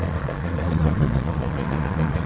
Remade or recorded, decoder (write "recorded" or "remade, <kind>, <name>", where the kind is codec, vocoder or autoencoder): remade, vocoder, Vocos